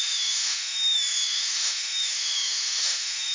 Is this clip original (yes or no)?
no